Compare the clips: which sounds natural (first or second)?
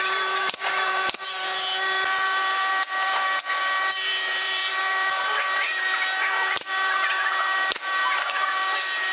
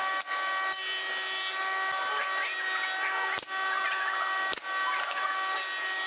second